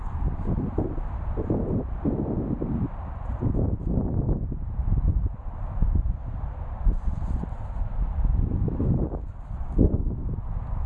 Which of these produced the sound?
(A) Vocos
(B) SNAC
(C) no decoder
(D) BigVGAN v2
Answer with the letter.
C